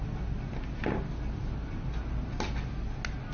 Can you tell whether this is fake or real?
real